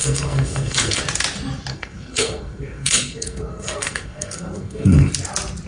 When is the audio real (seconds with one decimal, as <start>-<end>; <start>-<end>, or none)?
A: 1.0-1.7; 5.1-5.7